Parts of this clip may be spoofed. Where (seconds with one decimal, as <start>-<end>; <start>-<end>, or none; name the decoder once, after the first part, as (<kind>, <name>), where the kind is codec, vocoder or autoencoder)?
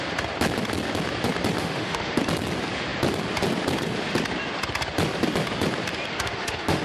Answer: 1.6-2.2 (autoencoder, DAC-VAE); 6.1-6.8